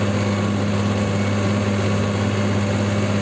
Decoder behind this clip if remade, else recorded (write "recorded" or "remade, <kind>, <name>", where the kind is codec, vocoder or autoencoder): recorded